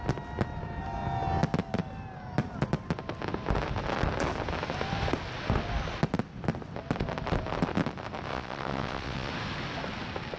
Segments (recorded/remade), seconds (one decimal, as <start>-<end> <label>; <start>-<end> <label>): 0.0-8.3 recorded; 8.3-9.3 remade; 9.3-10.4 recorded